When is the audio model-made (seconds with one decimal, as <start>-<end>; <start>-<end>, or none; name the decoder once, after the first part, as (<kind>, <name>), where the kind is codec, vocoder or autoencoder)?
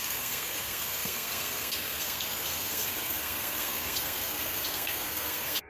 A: 0.0-5.7 (codec, SNAC)